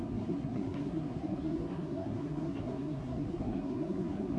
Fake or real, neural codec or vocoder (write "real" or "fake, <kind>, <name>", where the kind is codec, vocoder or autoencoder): fake, codec, SNAC